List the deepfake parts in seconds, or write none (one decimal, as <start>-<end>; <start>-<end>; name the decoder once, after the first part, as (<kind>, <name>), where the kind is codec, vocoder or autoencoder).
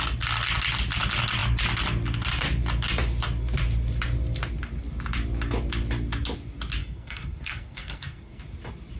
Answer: 6.8-8.4 (codec, SNAC)